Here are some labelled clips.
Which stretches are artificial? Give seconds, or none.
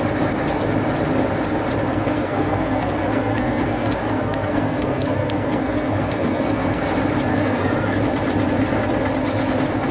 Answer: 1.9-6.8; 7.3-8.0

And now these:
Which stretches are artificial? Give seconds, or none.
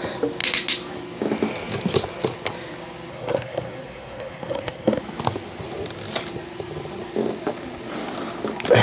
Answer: 3.1-5.0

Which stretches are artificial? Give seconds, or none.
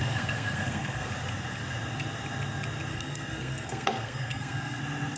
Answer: 0.0-1.1; 2.9-4.8